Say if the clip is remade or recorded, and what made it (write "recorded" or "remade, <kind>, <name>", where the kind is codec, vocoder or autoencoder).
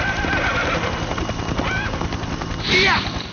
recorded